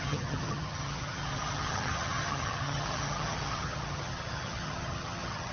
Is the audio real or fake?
fake